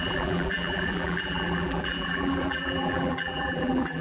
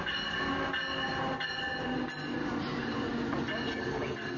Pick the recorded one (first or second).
second